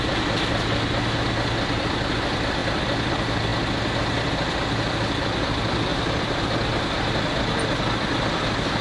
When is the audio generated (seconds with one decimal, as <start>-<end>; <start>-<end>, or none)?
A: 5.9-6.4